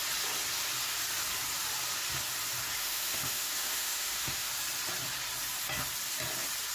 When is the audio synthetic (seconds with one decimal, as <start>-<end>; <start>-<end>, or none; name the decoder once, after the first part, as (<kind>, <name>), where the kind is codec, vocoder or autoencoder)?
2.8-4.5 (autoencoder, DAC-VAE)